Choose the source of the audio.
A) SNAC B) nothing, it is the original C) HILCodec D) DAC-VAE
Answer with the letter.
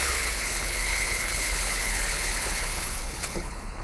C